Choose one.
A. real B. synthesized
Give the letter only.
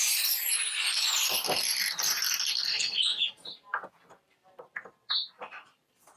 A